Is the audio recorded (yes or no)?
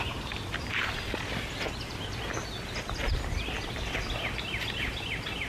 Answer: yes